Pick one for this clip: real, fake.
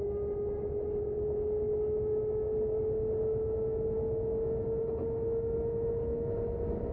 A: real